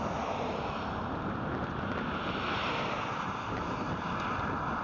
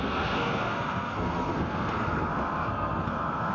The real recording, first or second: first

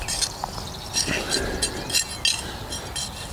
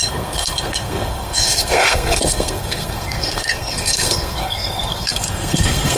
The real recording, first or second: first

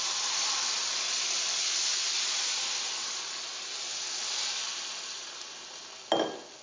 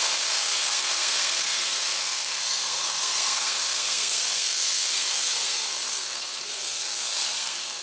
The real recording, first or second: first